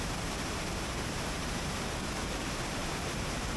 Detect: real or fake fake